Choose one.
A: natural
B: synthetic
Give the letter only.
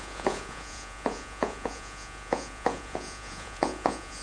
B